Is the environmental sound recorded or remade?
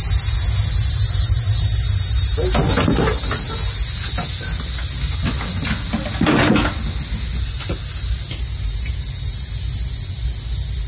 recorded